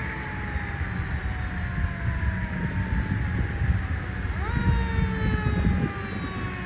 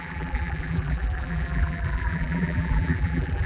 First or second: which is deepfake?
second